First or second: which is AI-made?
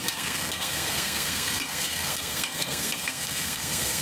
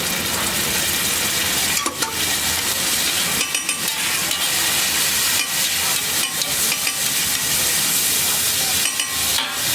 first